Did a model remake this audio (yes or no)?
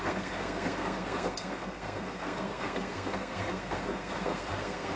yes